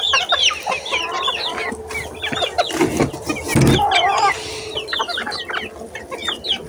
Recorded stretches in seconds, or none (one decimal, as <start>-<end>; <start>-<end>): 0.0-6.7